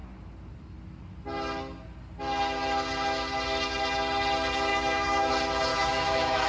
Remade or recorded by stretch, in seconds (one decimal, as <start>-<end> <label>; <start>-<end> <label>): 0.0-4.7 recorded; 4.7-5.3 remade; 5.3-5.7 recorded; 5.7-6.5 remade